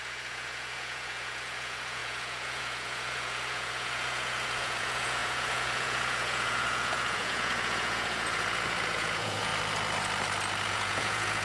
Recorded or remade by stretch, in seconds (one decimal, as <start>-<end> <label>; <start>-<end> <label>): 0.0-9.5 remade; 9.5-10.7 recorded; 10.7-11.4 remade